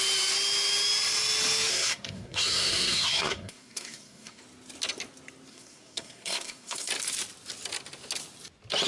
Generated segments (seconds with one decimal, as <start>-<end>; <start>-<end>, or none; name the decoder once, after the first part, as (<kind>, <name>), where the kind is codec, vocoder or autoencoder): 1.7-4.4 (codec, SNAC); 5.5-6.9